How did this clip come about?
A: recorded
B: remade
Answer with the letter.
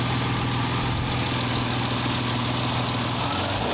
A